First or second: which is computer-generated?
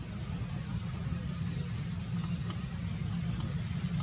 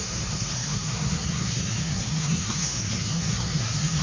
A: second